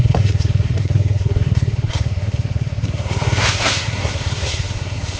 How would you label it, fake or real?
fake